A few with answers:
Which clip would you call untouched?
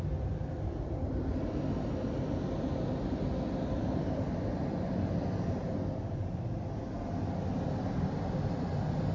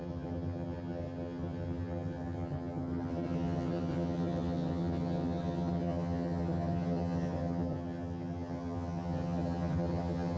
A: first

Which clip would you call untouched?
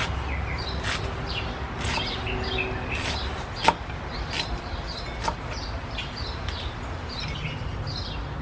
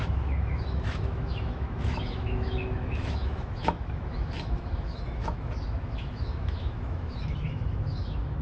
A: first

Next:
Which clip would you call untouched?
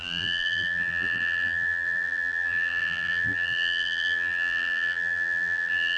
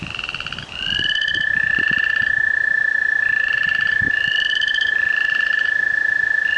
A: second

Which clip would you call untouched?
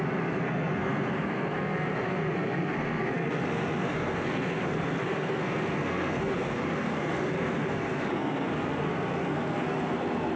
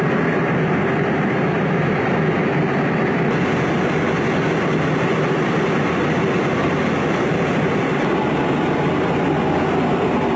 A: second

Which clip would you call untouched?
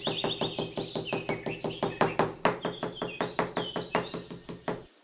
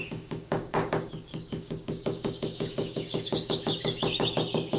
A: first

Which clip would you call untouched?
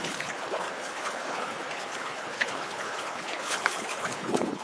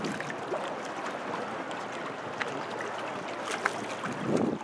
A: second